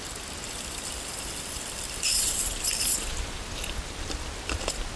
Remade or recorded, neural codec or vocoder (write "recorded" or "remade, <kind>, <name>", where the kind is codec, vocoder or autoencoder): recorded